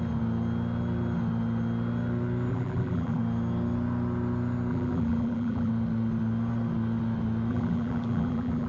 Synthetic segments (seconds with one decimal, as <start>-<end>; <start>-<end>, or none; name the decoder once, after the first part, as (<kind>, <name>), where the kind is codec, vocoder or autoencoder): 2.5-3.2 (vocoder, BigVGAN v2); 4.7-5.7; 7.5-8.7